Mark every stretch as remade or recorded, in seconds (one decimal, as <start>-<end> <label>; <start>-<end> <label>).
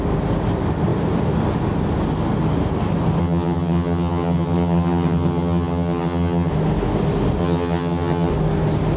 0.0-3.2 recorded; 3.2-6.5 remade; 6.5-7.4 recorded; 7.4-8.3 remade; 8.3-9.0 recorded